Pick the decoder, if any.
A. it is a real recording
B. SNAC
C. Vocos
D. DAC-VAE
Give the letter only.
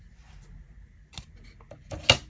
A